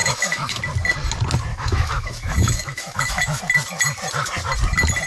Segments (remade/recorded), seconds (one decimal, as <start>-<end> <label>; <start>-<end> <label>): 0.0-0.6 remade; 0.6-1.5 recorded; 1.5-3.4 remade; 3.4-5.1 recorded

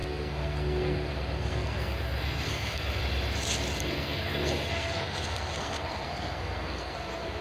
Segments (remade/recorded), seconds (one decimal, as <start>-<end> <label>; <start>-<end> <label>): 0.0-3.0 remade; 3.0-3.8 recorded; 3.8-7.4 remade

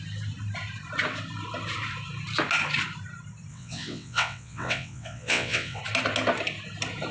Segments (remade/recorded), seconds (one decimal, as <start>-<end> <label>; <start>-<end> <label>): 0.0-3.5 recorded; 3.5-5.8 remade; 5.8-7.1 recorded

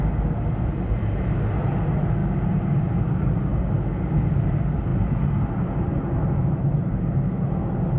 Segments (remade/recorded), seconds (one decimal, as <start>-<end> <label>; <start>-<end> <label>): 0.0-8.0 recorded